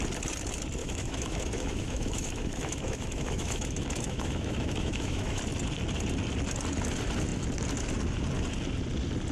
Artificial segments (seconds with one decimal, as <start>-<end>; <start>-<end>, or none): 0.8-5.4